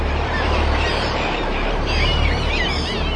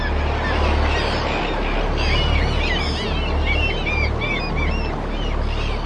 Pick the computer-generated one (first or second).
first